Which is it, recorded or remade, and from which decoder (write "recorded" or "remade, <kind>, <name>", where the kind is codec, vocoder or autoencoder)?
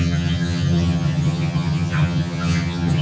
remade, vocoder, HiFi-GAN